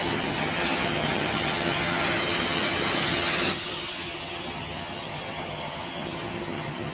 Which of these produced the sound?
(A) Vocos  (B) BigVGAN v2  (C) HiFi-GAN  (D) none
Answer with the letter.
C